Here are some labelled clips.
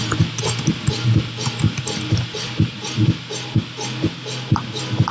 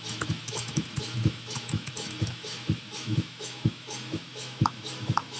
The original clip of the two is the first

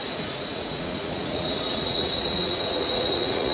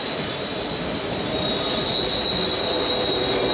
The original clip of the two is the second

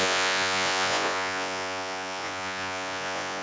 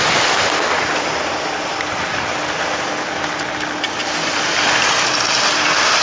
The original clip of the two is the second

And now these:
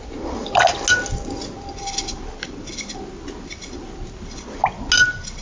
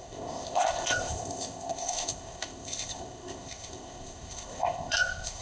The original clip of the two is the first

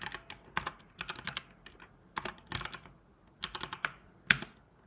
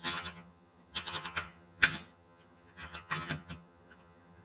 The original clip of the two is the first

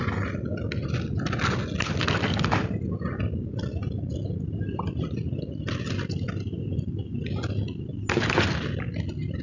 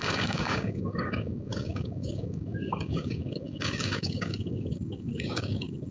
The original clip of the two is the first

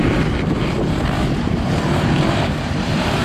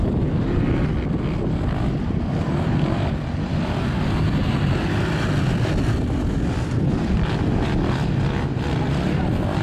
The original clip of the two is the second